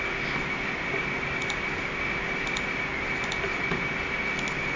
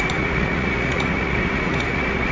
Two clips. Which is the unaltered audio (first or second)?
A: first